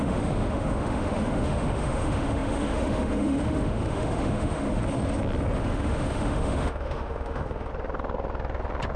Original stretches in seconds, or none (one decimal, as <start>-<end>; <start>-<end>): 4.8-5.6; 7.7-9.0